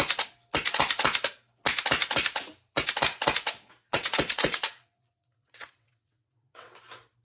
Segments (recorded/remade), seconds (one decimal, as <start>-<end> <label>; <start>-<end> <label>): 0.0-3.9 recorded; 3.9-6.8 remade; 6.8-7.2 recorded